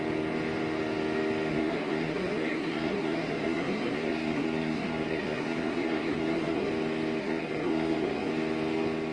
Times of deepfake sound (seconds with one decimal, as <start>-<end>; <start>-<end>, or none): 1.5-6.7; 7.2-8.3